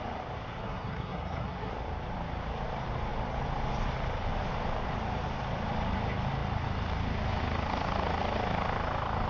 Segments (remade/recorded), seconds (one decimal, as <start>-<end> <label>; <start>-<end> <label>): 0.0-0.6 recorded; 0.6-1.7 remade; 1.7-9.3 recorded